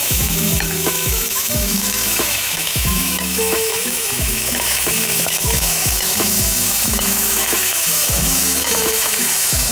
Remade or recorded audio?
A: remade